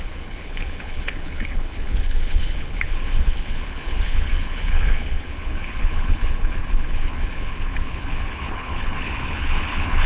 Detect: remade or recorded remade